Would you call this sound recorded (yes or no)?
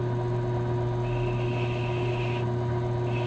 yes